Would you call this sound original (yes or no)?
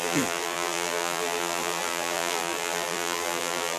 no